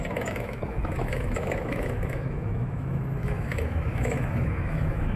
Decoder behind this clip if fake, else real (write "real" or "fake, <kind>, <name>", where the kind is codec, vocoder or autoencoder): fake, autoencoder, DAC-VAE